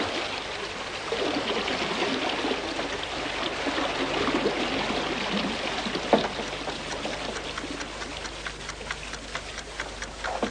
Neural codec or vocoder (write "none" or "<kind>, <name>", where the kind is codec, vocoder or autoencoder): none